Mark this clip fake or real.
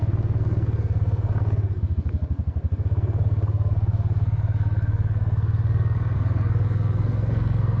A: fake